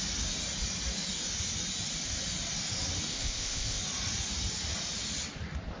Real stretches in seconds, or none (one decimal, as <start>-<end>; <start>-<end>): 0.0-3.1; 3.8-5.8